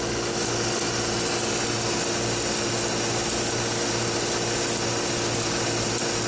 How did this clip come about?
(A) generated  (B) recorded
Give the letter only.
B